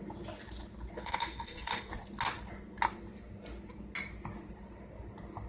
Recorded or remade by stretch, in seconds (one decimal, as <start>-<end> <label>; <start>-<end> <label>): 0.0-1.0 recorded; 1.0-1.9 remade; 1.9-5.5 recorded